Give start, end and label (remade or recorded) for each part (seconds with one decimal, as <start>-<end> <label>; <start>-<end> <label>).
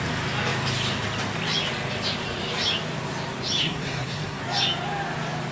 0.0-3.6 recorded; 3.6-4.4 remade; 4.4-5.5 recorded